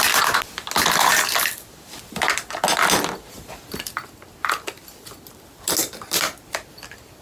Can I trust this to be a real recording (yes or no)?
yes